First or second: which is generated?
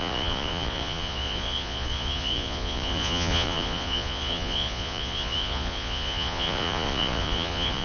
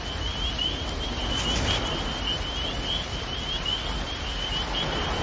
first